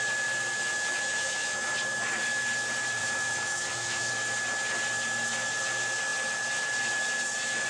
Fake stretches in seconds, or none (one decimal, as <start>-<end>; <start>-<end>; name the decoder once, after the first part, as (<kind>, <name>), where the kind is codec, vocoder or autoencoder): 0.7-1.7 (autoencoder, DAC-VAE); 3.0-4.1